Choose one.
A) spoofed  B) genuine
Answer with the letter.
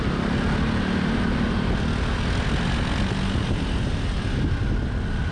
B